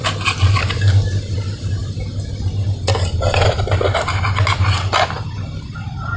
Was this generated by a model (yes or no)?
no